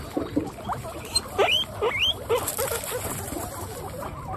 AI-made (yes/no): yes